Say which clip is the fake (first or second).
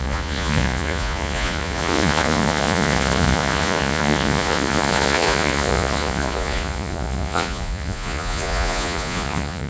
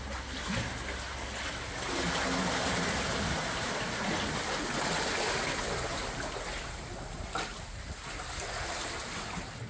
first